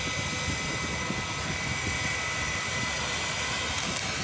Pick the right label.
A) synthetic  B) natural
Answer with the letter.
B